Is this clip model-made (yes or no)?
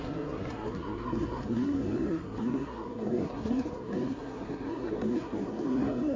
yes